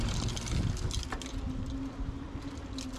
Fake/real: real